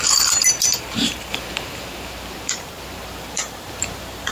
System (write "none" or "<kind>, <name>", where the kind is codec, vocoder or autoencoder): vocoder, BigVGAN v2